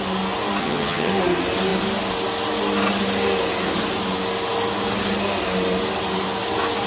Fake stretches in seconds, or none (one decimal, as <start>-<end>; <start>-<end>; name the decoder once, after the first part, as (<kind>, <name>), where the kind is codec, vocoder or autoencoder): 0.6-1.1 (vocoder, HiFi-GAN)